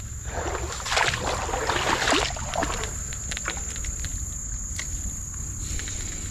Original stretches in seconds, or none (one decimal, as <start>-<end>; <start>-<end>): 0.0-6.3